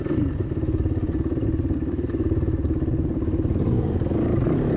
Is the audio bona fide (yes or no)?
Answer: no